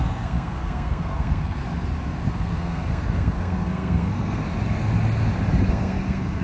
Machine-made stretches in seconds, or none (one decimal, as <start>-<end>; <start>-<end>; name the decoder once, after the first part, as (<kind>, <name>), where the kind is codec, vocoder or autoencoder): 0.0-1.6 (codec, SNAC); 2.3-4.4; 5.7-6.4